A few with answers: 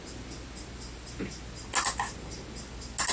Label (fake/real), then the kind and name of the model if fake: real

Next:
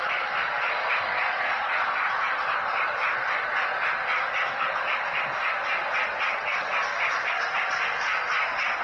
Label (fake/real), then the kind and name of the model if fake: real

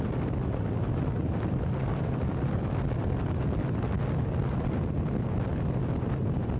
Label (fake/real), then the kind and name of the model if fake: real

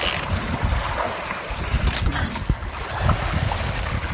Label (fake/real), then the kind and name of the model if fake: real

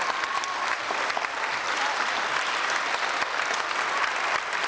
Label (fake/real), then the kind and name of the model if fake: fake, vocoder, BigVGAN v2